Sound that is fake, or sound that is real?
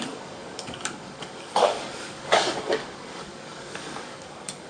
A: fake